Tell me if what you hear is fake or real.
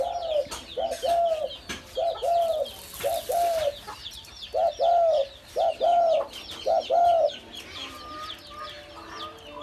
real